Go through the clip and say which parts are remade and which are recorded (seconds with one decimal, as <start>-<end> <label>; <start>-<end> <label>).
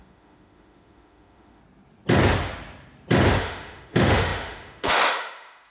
0.0-1.6 remade; 1.6-3.4 recorded; 3.4-5.7 remade